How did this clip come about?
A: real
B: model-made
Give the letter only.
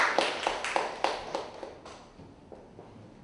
A